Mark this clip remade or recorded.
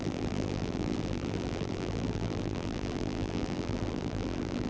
remade